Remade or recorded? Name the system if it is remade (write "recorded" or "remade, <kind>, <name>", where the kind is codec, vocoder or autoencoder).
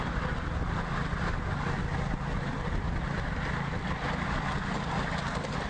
recorded